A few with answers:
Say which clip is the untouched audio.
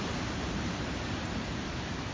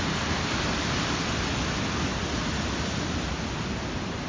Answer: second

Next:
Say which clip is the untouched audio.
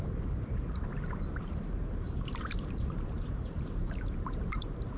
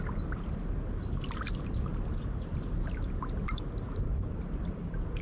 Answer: second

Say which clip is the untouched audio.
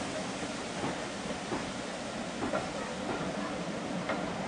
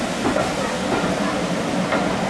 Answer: second